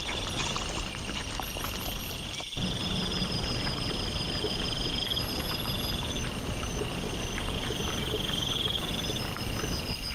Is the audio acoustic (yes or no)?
no